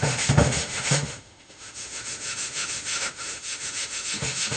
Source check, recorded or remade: remade